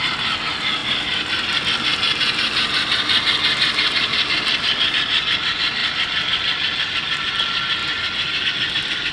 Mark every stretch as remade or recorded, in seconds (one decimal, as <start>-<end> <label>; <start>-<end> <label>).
0.0-7.8 recorded; 7.8-8.4 remade; 8.4-9.1 recorded